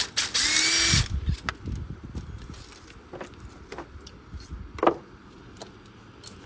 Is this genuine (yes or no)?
yes